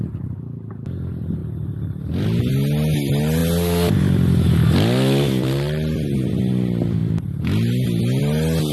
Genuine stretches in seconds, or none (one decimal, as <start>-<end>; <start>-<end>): 0.0-8.7